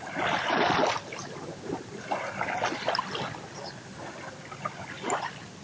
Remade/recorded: recorded